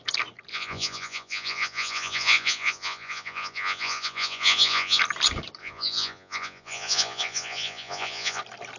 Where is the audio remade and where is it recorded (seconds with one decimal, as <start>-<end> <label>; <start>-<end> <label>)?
0.0-0.5 recorded; 0.5-5.0 remade; 5.0-5.6 recorded; 5.6-8.4 remade; 8.4-8.8 recorded